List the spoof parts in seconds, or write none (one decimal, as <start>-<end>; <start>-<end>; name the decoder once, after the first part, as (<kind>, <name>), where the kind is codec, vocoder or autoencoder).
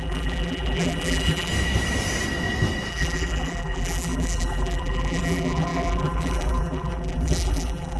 0.0-1.5 (vocoder, BigVGAN v2); 2.9-8.0